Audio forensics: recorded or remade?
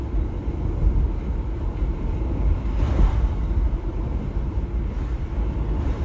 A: remade